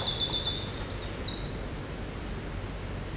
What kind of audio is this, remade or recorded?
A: recorded